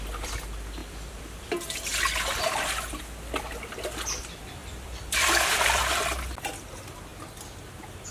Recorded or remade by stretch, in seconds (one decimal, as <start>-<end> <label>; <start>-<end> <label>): 0.0-0.8 recorded; 0.8-1.5 remade; 1.5-4.6 recorded; 4.6-5.9 remade; 5.9-8.1 recorded